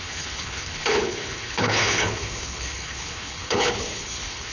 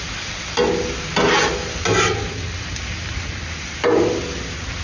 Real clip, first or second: second